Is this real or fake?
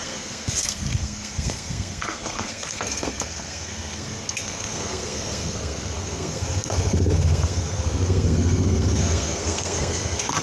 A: fake